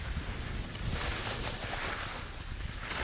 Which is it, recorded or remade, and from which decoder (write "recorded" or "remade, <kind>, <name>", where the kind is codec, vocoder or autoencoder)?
recorded